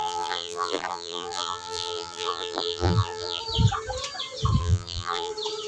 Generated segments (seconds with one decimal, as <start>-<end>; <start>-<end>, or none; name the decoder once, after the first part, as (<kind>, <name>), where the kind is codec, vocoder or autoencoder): 0.0-3.4 (vocoder, BigVGAN v2); 4.6-5.3